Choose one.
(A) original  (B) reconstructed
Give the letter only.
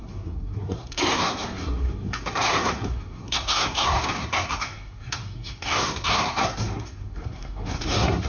B